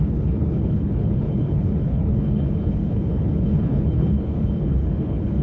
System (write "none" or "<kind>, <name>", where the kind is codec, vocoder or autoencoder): codec, HILCodec